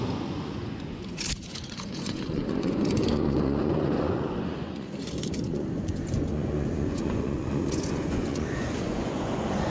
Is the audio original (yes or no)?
no